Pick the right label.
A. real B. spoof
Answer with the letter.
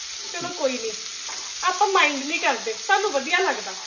A